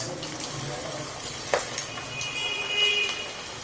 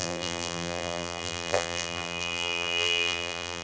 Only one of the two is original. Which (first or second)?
first